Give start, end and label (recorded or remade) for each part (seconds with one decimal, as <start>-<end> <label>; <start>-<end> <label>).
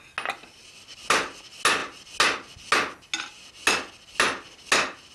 0.0-5.1 recorded